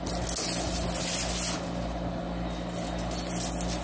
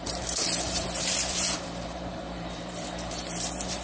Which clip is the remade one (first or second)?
second